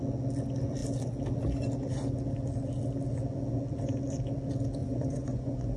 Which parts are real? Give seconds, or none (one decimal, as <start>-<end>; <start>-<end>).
0.0-4.8